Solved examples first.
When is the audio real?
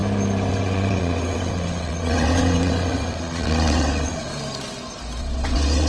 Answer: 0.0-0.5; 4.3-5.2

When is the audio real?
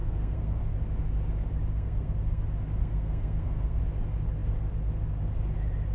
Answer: 0.6-1.7; 2.4-2.8; 3.8-5.9